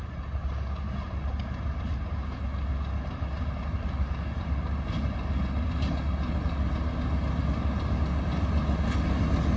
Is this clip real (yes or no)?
yes